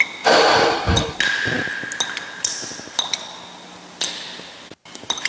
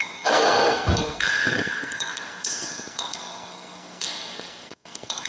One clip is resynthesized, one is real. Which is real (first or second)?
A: first